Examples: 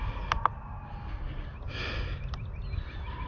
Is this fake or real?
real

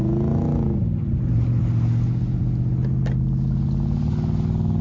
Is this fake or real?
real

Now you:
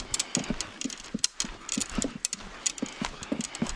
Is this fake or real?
real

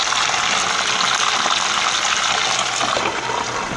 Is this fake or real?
real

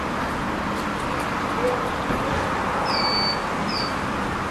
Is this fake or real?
real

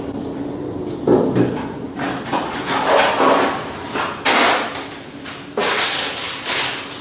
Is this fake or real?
real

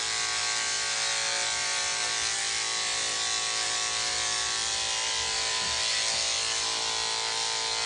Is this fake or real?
real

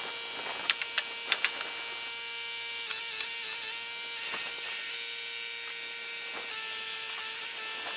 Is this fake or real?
real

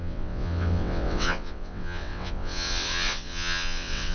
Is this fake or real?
fake